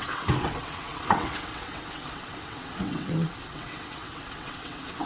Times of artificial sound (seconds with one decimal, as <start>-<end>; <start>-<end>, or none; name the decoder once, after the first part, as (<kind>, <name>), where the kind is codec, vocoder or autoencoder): 0.0-5.1 (vocoder, WaveNeXt)